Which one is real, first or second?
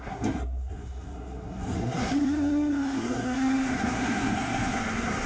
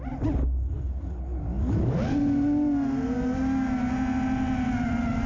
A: second